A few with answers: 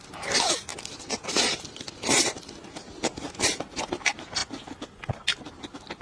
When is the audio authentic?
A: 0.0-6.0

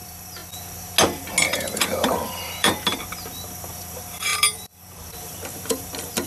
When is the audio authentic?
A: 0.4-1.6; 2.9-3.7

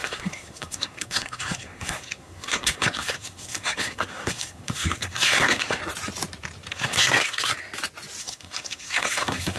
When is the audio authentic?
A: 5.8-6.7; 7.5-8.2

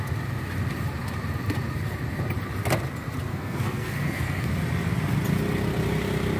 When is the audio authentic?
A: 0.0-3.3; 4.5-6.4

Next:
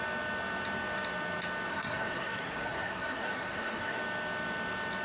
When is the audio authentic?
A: 0.0-1.7; 4.0-5.0

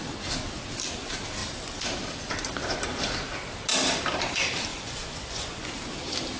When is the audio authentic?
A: 0.0-4.7; 5.9-6.4

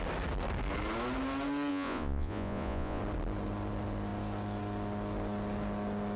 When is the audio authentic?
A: 0.0-1.7; 3.0-6.2

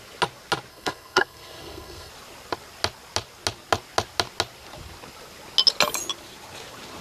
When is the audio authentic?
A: 0.0-0.7; 2.1-7.0